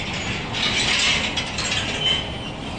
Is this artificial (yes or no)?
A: no